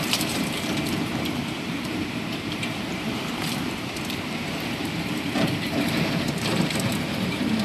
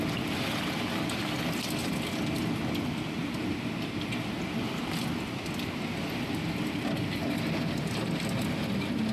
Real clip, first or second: second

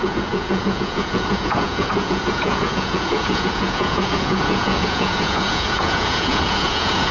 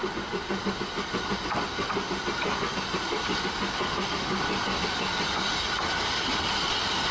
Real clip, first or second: second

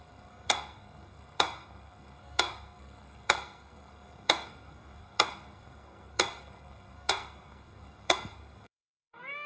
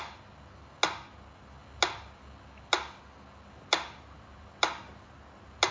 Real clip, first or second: second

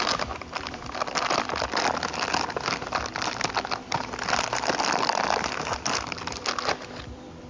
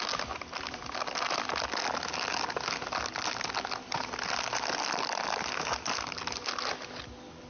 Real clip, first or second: second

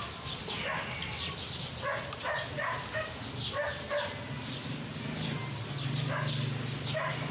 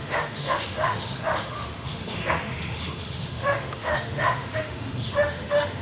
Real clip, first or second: first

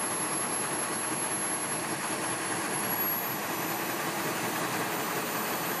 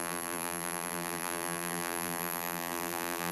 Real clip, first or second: first